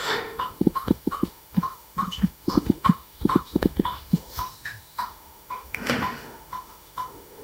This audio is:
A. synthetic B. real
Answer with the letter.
A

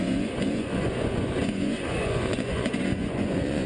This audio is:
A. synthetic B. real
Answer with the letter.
A